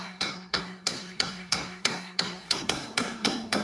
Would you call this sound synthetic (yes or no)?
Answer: yes